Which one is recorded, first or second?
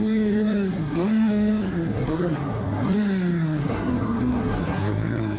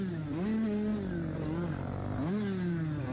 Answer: second